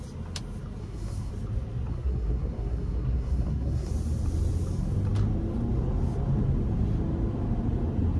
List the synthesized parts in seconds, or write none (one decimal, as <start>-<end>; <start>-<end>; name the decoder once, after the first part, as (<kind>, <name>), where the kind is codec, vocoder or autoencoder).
0.8-1.3 (codec, SNAC); 1.9-3.9